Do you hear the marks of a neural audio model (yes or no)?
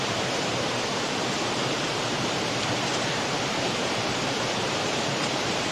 yes